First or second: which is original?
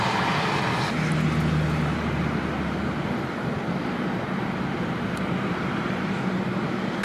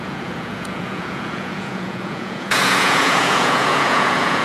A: first